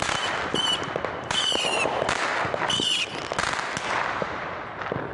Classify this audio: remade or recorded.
recorded